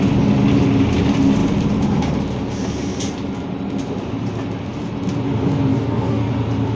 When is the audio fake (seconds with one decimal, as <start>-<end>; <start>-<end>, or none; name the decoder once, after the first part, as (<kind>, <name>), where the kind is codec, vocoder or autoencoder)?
5.7-6.3 (codec, DAC)